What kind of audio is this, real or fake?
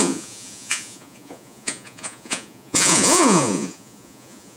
fake